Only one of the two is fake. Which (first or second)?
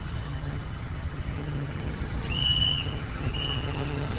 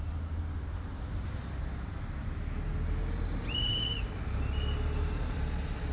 first